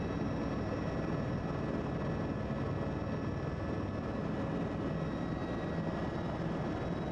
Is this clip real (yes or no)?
yes